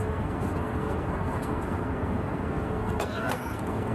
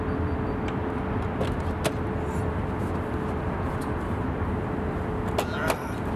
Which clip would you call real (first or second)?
second